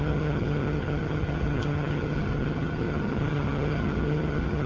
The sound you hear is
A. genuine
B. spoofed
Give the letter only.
B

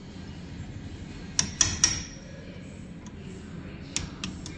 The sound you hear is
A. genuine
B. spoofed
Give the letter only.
A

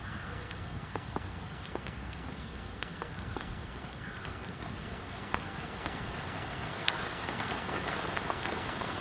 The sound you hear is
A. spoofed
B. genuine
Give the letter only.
A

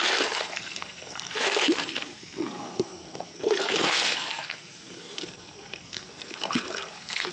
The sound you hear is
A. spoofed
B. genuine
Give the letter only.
A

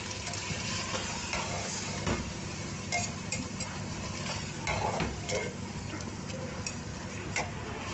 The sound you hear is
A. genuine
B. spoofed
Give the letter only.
A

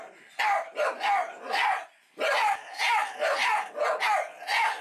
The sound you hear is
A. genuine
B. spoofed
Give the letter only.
A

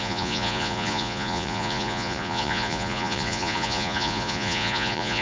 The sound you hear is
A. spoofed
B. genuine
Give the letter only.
A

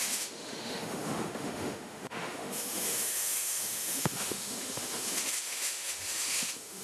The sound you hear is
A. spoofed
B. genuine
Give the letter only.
A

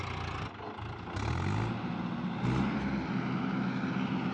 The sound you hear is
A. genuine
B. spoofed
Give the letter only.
A